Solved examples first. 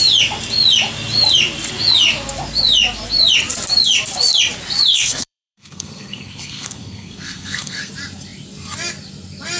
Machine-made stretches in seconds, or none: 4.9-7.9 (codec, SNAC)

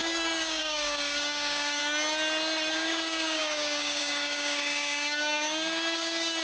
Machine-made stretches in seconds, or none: 0.0-1.8 (codec, DAC); 2.7-6.4

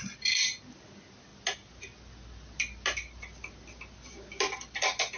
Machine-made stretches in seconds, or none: none

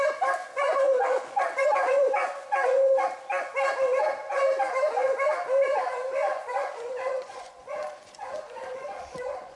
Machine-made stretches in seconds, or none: 0.4-3.0 (vocoder, Vocos); 6.2-9.6

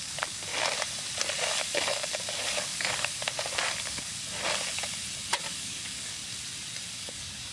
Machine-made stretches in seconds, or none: 0.0-0.5 (codec, DAC); 1.6-4.1; 5.4-6.2; 6.9-7.5